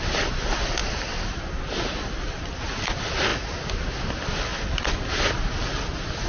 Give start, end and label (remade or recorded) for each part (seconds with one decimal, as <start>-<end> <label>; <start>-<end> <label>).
0.0-6.3 recorded